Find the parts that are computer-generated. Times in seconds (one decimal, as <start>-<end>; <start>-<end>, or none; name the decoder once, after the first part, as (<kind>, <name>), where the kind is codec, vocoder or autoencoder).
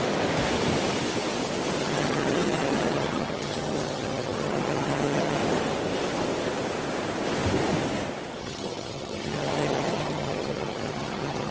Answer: 1.8-5.4 (vocoder, HiFi-GAN); 8.4-11.5